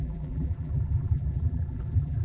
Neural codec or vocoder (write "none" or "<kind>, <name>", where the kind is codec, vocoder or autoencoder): vocoder, BigVGAN v2